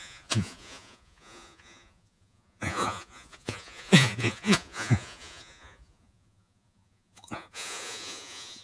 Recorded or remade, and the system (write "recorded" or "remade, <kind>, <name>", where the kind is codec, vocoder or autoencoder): remade, vocoder, Vocos